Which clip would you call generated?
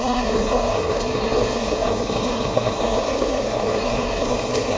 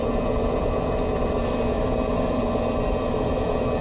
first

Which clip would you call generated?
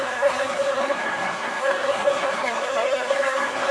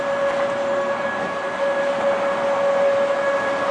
first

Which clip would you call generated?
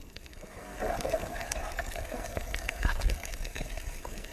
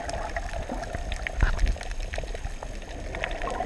first